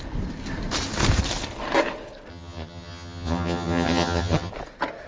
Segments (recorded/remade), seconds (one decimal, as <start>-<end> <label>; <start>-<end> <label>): 0.0-2.3 recorded; 2.3-4.5 remade; 4.5-5.1 recorded